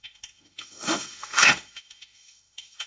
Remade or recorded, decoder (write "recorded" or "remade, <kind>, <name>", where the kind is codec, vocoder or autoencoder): remade, autoencoder, DAC-VAE